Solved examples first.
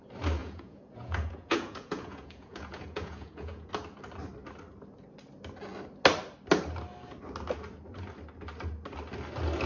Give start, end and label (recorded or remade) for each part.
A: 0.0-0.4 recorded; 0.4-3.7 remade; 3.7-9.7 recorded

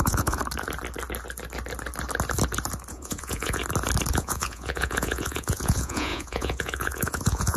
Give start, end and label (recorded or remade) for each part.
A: 0.0-0.4 remade; 0.4-2.9 recorded; 2.9-3.6 remade; 3.6-4.1 recorded; 4.1-7.6 remade

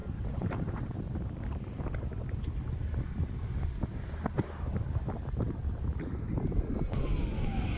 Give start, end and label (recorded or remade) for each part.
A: 0.0-1.6 remade; 1.6-7.8 recorded